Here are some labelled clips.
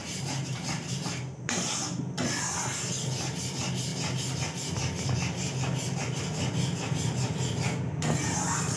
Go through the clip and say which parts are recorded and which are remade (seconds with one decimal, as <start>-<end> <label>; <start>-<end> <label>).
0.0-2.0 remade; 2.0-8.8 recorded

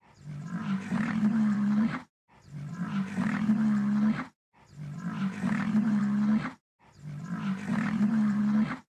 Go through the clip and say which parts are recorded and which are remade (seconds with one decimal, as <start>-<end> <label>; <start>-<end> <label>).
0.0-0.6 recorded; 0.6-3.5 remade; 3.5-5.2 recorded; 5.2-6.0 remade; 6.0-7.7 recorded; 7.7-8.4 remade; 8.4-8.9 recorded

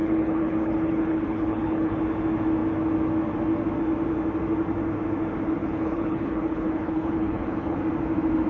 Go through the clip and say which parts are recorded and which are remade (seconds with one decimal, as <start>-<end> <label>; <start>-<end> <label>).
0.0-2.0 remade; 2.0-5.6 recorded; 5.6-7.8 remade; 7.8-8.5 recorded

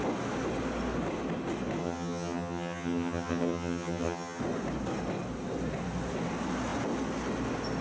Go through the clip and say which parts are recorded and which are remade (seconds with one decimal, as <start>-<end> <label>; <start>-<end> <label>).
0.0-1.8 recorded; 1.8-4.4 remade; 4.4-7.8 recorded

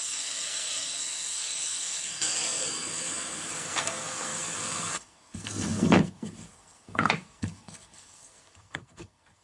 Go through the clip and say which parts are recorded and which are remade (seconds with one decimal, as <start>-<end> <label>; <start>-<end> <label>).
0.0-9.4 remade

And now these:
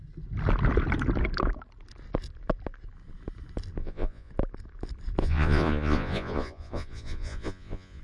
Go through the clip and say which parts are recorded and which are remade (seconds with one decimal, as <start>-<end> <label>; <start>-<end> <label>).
0.0-3.8 recorded; 3.8-4.3 remade; 4.3-5.2 recorded; 5.2-8.0 remade

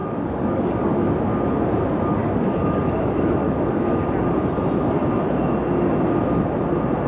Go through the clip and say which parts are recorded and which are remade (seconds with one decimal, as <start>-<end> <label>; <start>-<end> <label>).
0.0-1.1 remade; 1.1-2.2 recorded; 2.2-4.0 remade; 4.0-7.1 recorded